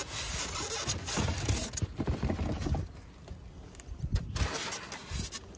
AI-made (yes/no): no